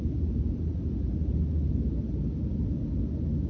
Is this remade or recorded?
recorded